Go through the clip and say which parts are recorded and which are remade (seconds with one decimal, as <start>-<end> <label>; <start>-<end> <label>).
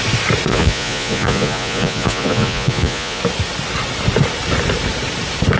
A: 0.0-0.5 recorded; 0.5-3.2 remade; 3.2-5.6 recorded